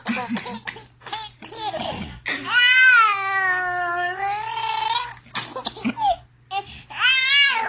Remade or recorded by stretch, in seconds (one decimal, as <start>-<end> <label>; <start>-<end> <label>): 0.0-7.7 recorded